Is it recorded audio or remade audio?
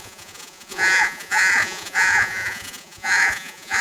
remade